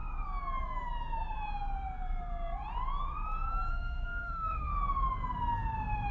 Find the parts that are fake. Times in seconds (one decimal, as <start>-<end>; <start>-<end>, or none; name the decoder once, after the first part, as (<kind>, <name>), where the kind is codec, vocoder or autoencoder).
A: 3.7-4.7 (autoencoder, DAC-VAE)